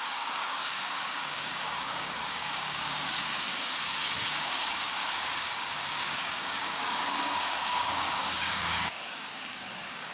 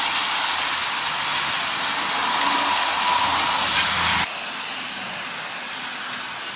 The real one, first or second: second